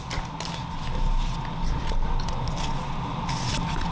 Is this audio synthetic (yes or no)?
no